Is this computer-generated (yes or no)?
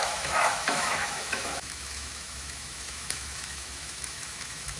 yes